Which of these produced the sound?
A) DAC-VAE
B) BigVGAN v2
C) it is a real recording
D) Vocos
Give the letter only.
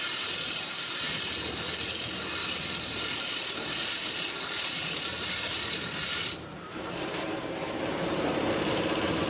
B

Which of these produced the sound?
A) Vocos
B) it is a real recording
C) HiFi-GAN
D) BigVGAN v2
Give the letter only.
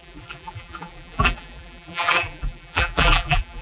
D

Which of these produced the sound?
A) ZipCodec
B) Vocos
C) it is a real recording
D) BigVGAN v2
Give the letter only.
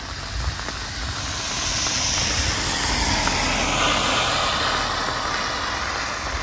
C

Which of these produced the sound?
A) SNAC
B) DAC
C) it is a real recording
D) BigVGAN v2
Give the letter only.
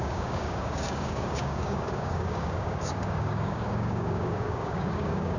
B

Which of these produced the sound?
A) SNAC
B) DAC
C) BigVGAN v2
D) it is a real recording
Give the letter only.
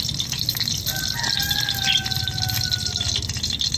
D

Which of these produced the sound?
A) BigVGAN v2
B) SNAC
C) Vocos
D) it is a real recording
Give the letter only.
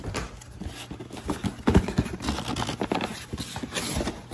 D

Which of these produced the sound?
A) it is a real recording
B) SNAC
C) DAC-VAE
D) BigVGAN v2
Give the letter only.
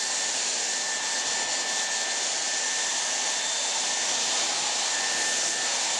A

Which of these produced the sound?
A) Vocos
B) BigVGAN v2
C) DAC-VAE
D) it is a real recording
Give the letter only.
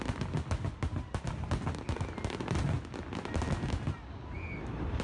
D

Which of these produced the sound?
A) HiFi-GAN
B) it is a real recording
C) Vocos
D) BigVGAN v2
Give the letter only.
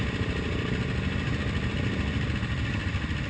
B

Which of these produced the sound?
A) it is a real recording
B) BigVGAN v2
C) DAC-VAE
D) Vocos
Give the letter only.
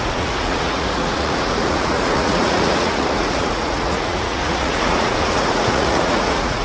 D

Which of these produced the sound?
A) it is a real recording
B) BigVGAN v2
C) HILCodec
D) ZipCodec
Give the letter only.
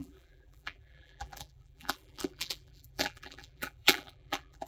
B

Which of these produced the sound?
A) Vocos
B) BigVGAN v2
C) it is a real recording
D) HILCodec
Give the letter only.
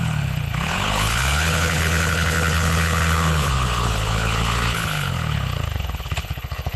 D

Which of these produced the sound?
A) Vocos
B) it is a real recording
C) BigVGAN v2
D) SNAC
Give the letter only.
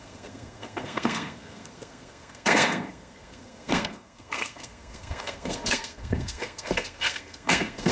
D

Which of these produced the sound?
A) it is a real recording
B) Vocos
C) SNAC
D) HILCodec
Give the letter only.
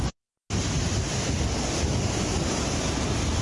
A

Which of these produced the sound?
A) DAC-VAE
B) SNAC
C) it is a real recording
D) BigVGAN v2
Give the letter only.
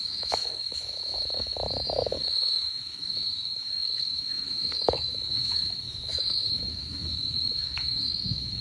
A